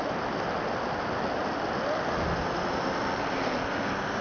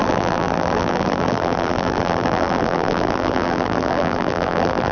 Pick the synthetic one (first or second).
second